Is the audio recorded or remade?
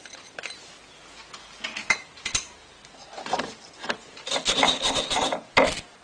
recorded